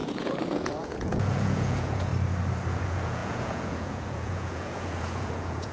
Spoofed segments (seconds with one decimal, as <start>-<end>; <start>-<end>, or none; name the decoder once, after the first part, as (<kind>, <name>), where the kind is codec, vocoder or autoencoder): 0.0-2.1 (vocoder, Vocos); 2.7-5.7